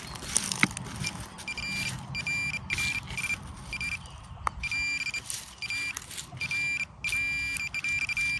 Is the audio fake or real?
real